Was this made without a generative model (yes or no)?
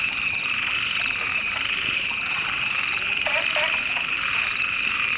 no